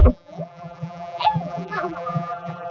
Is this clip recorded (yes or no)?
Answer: no